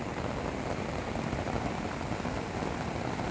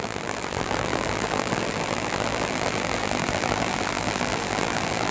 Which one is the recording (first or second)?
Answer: first